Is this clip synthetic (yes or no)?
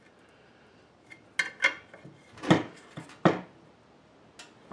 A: no